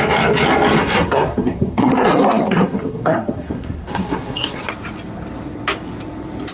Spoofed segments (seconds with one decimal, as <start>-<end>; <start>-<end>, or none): 0.8-4.7